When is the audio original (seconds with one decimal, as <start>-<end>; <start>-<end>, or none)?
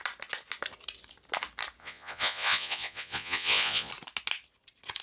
0.0-1.8; 3.9-5.0